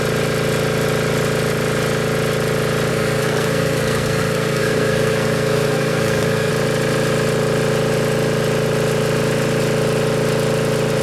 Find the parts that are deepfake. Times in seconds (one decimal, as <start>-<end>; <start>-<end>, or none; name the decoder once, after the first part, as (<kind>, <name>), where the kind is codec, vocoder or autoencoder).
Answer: 2.9-6.5 (codec, SNAC)